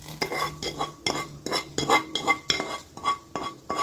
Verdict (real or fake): real